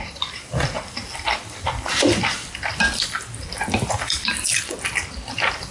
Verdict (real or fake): fake